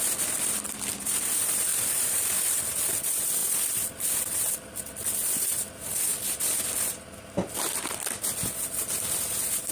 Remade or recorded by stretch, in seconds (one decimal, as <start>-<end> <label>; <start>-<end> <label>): 0.0-1.7 recorded; 1.7-2.6 remade; 2.6-9.7 recorded